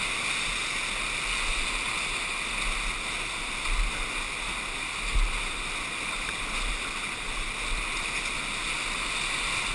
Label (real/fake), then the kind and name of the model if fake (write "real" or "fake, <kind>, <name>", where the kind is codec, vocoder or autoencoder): real